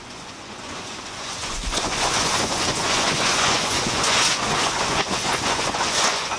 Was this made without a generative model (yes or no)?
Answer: no